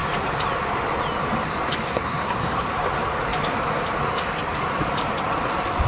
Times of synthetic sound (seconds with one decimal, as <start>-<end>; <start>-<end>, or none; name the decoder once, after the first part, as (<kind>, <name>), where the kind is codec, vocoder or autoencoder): 1.9-2.6 (codec, SNAC)